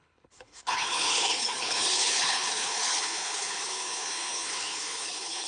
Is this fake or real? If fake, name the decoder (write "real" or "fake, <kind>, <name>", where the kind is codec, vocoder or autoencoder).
fake, codec, HILCodec